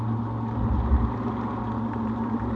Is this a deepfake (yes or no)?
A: no